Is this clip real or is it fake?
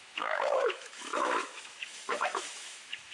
fake